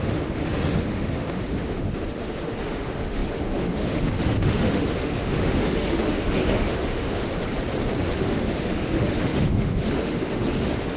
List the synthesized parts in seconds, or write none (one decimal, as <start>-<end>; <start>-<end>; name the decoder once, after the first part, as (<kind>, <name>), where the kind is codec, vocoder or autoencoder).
0.0-7.3 (autoencoder, DAC-VAE); 8.2-11.0